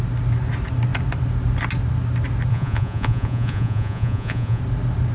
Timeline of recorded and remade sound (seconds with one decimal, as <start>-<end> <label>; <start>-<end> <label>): 0.0-2.5 recorded; 2.5-4.6 remade; 4.6-5.1 recorded